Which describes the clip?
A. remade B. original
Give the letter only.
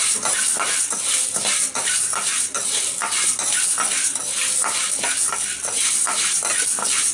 B